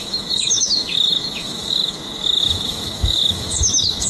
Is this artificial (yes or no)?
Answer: yes